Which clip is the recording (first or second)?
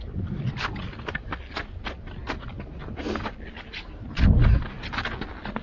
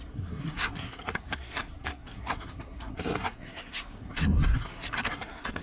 first